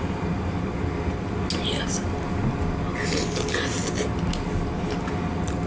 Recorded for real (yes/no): yes